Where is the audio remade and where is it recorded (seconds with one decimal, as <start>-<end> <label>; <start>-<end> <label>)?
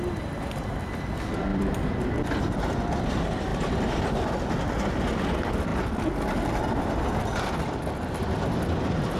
0.0-1.5 recorded; 1.5-2.4 remade; 2.4-3.5 recorded; 3.5-4.3 remade; 4.3-9.2 recorded